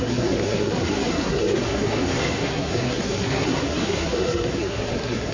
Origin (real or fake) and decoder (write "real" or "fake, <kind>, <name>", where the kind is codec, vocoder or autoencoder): fake, codec, SNAC